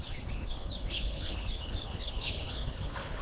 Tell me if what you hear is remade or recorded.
remade